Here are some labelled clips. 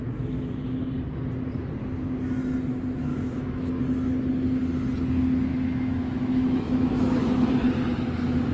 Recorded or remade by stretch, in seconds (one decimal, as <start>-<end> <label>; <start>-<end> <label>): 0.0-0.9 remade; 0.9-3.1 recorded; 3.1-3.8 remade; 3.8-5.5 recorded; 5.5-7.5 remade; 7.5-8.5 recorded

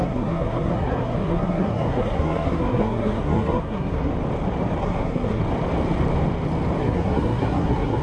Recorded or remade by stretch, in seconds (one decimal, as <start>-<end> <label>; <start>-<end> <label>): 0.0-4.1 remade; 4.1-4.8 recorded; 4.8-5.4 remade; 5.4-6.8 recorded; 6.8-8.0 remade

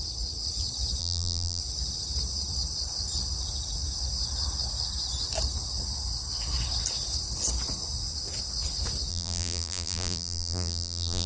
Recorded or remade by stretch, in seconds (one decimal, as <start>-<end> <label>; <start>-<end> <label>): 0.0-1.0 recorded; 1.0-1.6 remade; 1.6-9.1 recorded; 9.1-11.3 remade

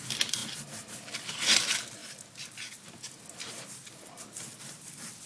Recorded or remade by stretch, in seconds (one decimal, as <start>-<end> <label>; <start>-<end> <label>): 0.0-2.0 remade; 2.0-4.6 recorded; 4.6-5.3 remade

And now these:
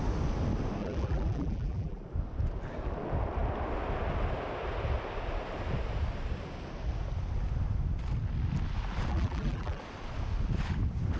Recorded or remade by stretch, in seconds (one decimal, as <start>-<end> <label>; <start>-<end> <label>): 0.0-0.8 recorded; 0.8-2.0 remade; 2.0-9.1 recorded; 9.1-9.8 remade; 9.8-11.2 recorded